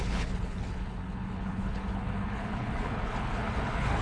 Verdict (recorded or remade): remade